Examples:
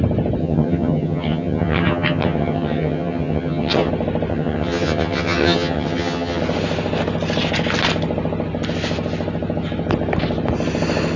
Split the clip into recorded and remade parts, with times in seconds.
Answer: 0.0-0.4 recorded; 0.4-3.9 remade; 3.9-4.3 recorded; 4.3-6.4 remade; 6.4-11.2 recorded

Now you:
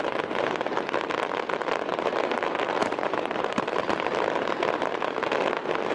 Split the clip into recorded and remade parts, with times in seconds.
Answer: 0.0-1.9 recorded; 1.9-3.7 remade; 3.7-5.9 recorded

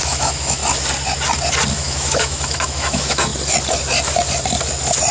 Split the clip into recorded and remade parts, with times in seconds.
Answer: 0.0-0.6 remade; 0.6-1.7 recorded; 1.7-3.3 remade; 3.3-5.1 recorded

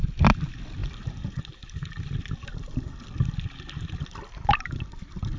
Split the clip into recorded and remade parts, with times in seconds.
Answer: 0.0-5.4 recorded

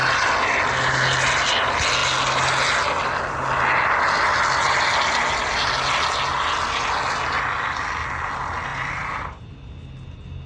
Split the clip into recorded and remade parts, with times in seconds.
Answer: 0.0-8.7 recorded; 8.7-9.4 remade; 9.4-10.5 recorded

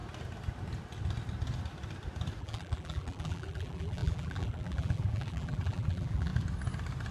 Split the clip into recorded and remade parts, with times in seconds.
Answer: 0.0-2.4 recorded; 2.4-6.3 remade; 6.3-7.1 recorded